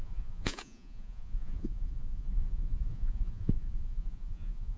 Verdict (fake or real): fake